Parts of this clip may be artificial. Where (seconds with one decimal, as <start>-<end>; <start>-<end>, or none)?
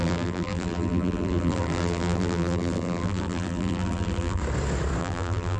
0.0-4.4; 5.0-5.6